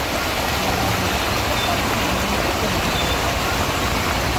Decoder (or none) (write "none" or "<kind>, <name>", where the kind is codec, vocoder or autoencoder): none